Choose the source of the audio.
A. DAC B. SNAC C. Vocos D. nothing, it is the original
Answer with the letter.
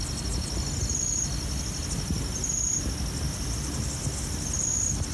D